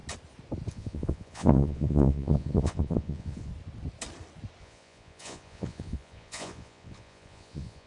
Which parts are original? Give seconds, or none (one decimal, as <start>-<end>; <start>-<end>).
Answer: 0.0-0.7; 3.5-4.6